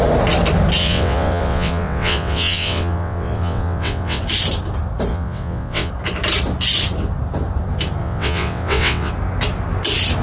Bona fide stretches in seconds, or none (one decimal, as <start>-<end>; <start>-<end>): 0.0-0.8; 4.2-5.1; 5.9-8.0; 9.1-10.2